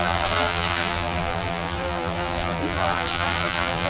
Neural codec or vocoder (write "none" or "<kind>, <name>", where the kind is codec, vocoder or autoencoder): vocoder, BigVGAN v2